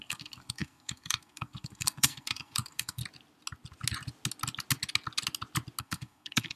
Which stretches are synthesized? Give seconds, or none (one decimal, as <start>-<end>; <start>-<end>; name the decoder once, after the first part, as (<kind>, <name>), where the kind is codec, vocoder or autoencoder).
0.0-3.0 (codec, SNAC); 5.8-6.6

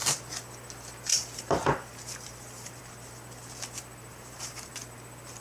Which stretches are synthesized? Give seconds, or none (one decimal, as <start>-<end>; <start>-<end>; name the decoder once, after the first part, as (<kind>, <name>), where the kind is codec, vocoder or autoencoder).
1.1-2.8 (vocoder, BigVGAN v2); 4.1-4.7